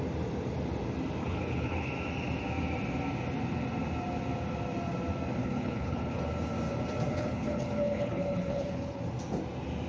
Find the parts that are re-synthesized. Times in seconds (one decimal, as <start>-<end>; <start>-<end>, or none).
1.2-1.9; 5.4-6.2; 7.1-9.0